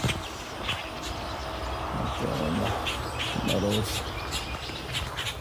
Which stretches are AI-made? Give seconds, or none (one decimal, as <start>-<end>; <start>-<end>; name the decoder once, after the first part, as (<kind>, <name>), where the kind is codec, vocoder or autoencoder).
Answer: 0.0-1.4 (vocoder, BigVGAN v2); 3.8-5.4